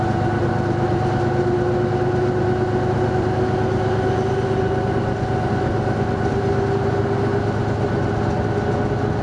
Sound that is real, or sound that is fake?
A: real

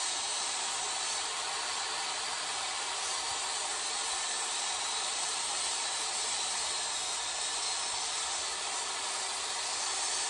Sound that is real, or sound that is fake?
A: fake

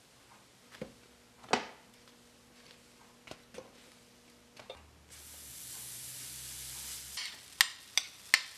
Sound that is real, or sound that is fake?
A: real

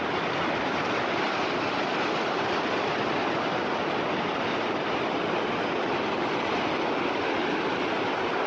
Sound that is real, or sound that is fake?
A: real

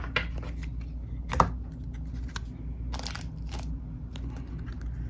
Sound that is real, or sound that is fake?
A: real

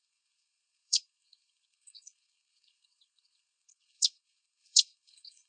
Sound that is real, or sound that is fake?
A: fake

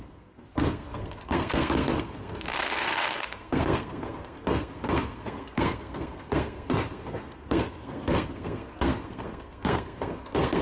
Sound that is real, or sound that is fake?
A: fake